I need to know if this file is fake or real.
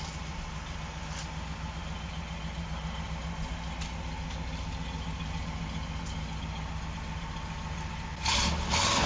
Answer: real